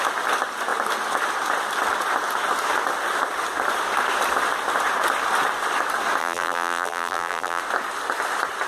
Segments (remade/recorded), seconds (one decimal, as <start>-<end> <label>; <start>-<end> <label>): 0.0-6.2 recorded; 6.2-7.6 remade; 7.6-8.7 recorded